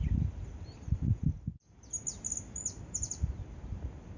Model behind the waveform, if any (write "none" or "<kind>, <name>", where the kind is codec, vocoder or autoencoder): none